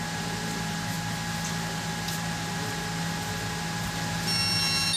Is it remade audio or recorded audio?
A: recorded